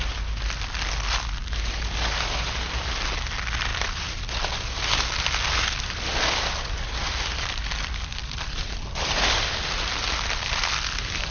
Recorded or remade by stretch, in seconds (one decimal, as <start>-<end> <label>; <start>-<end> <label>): 0.0-8.2 recorded; 8.2-9.3 remade; 9.3-11.3 recorded